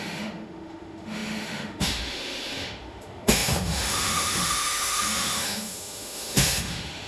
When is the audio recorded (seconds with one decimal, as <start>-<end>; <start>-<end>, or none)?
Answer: none